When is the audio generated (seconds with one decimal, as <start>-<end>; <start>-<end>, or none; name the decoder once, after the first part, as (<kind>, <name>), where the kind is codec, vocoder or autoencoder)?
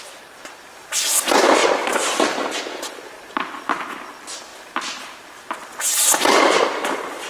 none